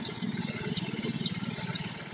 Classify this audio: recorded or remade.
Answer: recorded